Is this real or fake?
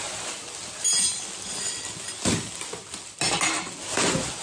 real